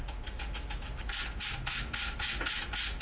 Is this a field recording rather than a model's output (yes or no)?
yes